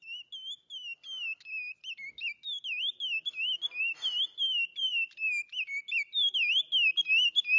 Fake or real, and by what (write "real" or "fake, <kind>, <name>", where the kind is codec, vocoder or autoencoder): real